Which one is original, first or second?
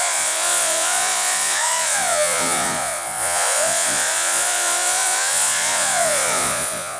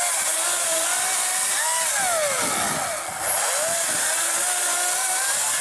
second